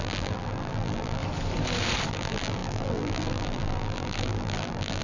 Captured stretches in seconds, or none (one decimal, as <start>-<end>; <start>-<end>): 1.2-2.1